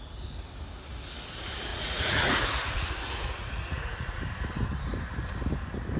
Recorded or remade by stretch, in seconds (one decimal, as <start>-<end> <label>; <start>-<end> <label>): 0.0-1.7 recorded; 1.7-4.2 remade; 4.2-6.0 recorded